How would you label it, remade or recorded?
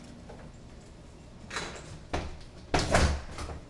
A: recorded